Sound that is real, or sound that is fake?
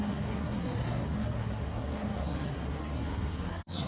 fake